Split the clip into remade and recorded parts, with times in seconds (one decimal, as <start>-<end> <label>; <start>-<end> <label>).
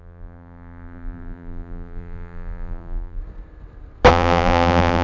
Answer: 0.0-3.2 remade; 3.2-4.1 recorded; 4.1-5.0 remade